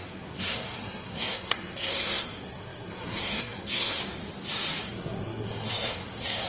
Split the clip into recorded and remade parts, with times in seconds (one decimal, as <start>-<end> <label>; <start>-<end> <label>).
0.0-4.0 remade; 4.0-4.8 recorded; 4.8-6.5 remade